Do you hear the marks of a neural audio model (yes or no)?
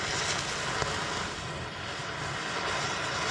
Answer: no